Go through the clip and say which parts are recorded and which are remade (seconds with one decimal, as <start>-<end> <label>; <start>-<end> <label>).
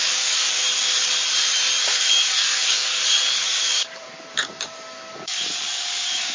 0.0-0.6 remade; 0.6-1.8 recorded; 1.8-6.3 remade